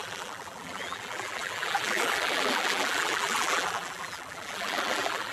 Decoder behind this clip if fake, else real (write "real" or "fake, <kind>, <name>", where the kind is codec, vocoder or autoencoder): fake, vocoder, BigVGAN v2